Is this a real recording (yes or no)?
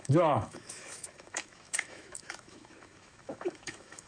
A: no